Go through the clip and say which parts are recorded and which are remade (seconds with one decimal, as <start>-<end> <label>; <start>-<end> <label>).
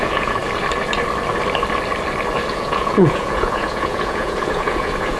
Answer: 0.0-0.4 remade; 0.4-2.5 recorded; 2.5-5.2 remade